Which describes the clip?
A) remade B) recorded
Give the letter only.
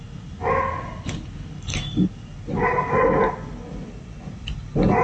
B